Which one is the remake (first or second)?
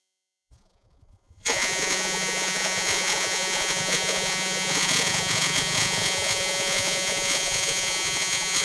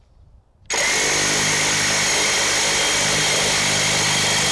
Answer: first